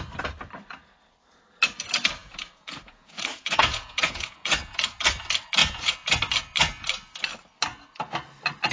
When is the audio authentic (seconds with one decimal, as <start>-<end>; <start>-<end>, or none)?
0.0-2.2; 5.0-5.6; 6.2-8.7